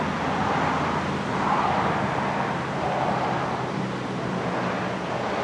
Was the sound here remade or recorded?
recorded